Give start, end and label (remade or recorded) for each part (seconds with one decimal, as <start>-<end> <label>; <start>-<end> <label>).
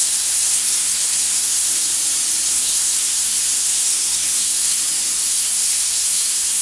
0.0-1.9 remade; 1.9-2.5 recorded; 2.5-4.8 remade; 4.8-5.3 recorded; 5.3-6.6 remade